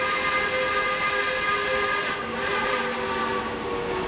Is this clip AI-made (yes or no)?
no